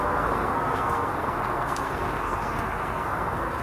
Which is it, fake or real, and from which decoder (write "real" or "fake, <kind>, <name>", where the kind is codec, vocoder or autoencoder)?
fake, codec, SNAC